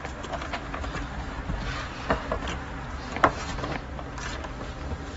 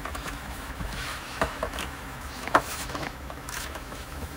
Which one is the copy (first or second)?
second